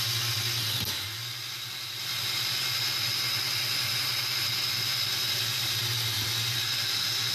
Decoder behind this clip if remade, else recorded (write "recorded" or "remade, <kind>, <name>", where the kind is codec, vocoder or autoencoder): recorded